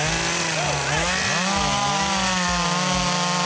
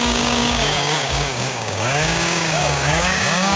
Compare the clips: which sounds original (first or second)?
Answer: first